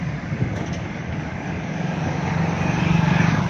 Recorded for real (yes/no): no